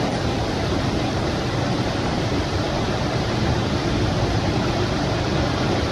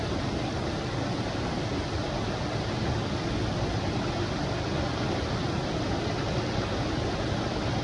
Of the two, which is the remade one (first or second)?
first